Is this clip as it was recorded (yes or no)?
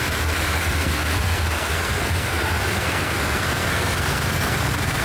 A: no